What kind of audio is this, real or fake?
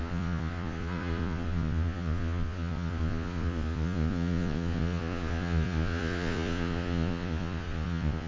fake